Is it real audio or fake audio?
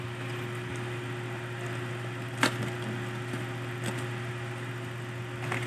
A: real